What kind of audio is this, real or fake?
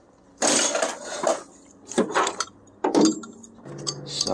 real